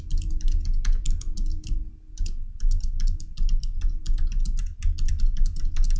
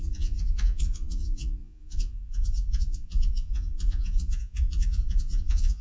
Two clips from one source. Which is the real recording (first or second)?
first